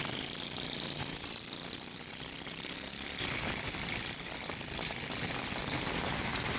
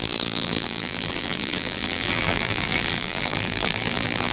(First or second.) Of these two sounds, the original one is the first